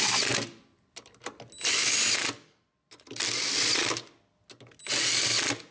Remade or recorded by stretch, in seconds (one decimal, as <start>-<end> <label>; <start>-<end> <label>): 0.0-5.7 recorded

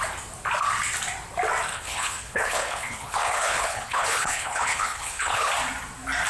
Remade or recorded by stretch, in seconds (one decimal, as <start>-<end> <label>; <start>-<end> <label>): 0.0-1.7 recorded; 1.7-5.5 remade; 5.5-6.3 recorded

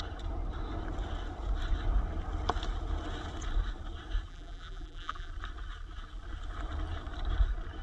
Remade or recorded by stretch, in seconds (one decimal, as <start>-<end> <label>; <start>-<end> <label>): 0.0-4.3 recorded; 4.3-5.3 remade; 5.3-7.8 recorded

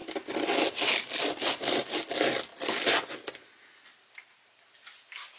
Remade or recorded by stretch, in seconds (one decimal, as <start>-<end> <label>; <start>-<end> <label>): 0.0-5.4 recorded

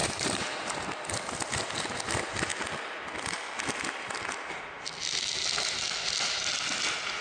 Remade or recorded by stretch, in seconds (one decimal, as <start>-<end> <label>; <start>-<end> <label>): 0.0-0.8 remade; 0.8-7.2 recorded

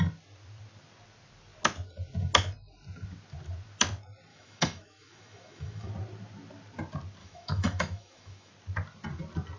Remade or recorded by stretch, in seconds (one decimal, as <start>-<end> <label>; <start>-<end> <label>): 0.0-4.3 recorded; 4.3-5.9 remade; 5.9-7.2 recorded; 7.2-8.5 remade; 8.5-9.6 recorded

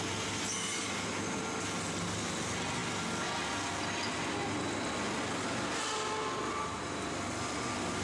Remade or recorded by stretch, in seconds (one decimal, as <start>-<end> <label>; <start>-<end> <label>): 0.0-8.0 recorded

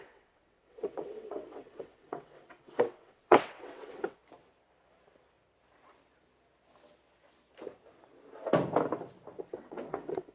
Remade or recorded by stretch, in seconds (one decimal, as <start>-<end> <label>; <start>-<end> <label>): 0.0-4.2 remade; 4.2-9.4 recorded; 9.4-10.3 remade